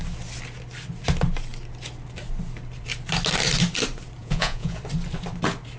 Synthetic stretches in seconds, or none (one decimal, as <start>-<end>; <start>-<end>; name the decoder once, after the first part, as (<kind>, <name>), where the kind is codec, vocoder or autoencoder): 4.2-4.8 (vocoder, Vocos)

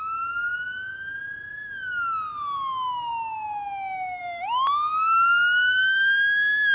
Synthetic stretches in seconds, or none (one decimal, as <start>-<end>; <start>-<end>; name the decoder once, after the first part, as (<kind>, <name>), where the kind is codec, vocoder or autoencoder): none

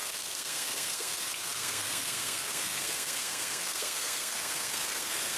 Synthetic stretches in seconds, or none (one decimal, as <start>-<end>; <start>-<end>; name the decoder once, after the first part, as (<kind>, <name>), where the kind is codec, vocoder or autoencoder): 0.0-5.4 (codec, SNAC)

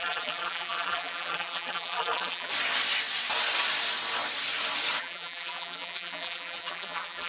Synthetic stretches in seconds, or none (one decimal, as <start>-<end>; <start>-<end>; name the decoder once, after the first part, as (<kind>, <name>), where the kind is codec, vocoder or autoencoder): 0.0-2.5 (vocoder, BigVGAN v2); 5.0-7.3

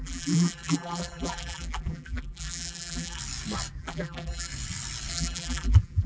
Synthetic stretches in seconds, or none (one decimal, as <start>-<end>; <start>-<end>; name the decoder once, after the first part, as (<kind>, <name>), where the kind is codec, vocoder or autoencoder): 0.0-3.2 (vocoder, BigVGAN v2); 3.8-4.5; 5.1-6.1

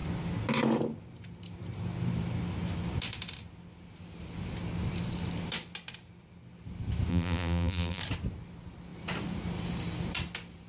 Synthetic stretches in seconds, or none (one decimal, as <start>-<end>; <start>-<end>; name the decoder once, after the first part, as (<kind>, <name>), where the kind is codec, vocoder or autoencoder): 7.1-8.0 (vocoder, BigVGAN v2)

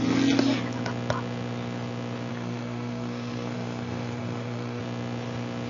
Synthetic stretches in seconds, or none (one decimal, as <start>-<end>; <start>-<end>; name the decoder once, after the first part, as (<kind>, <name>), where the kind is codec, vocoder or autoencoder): 2.3-4.8 (codec, SNAC)